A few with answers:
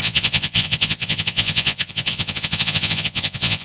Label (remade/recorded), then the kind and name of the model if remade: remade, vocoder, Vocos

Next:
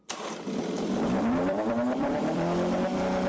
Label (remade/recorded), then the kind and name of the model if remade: remade, vocoder, BigVGAN v2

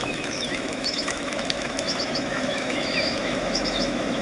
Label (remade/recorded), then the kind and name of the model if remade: remade, autoencoder, DAC-VAE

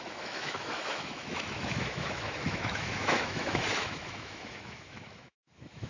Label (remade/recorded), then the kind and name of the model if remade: remade, autoencoder, DAC-VAE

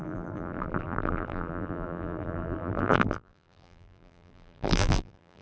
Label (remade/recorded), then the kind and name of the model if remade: remade, vocoder, BigVGAN v2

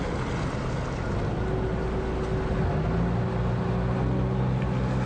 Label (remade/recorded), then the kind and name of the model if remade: recorded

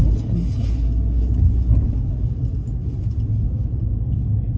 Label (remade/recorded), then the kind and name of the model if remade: recorded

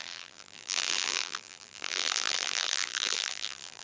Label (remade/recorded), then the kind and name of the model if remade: remade, vocoder, BigVGAN v2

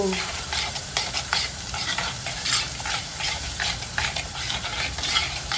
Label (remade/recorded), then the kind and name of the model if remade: remade, vocoder, BigVGAN v2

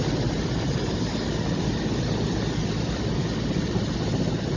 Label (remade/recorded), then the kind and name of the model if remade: recorded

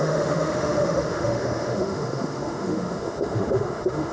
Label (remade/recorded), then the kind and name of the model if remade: remade, autoencoder, DAC-VAE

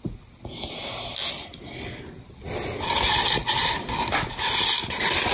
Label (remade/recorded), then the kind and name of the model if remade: recorded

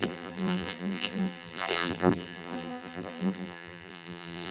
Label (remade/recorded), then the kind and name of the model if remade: remade, vocoder, BigVGAN v2